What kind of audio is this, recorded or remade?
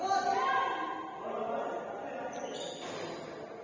recorded